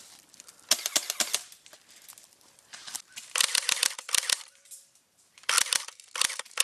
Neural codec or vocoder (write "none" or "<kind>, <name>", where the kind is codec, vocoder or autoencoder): vocoder, BigVGAN v2